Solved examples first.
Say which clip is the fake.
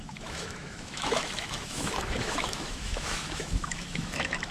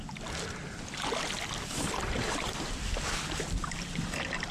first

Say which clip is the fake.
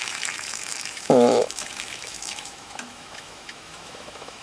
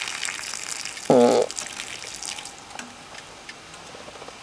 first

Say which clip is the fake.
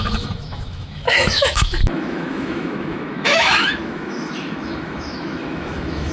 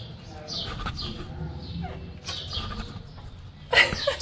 first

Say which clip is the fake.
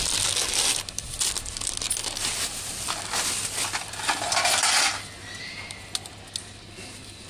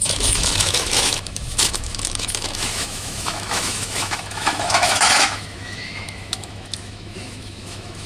second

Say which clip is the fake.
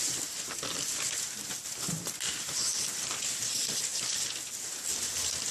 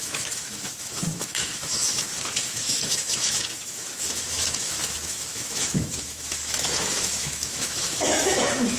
second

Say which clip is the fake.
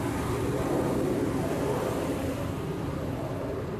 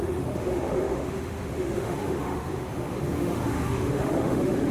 second